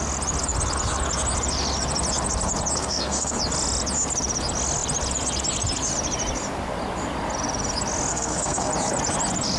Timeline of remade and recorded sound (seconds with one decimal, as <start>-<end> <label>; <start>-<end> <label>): 0.0-2.8 recorded; 2.8-3.4 remade; 3.4-8.1 recorded; 8.1-8.7 remade; 8.7-9.6 recorded